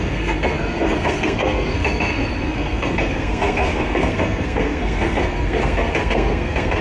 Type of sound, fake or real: fake